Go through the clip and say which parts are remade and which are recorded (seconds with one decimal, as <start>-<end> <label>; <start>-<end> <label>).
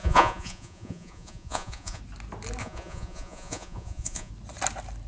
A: 0.0-2.0 remade; 2.0-2.6 recorded; 2.6-4.3 remade; 4.3-5.1 recorded